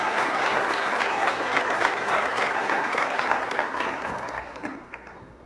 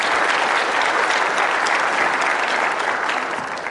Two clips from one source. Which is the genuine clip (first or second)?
second